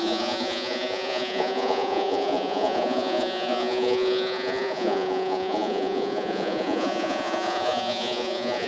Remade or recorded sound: remade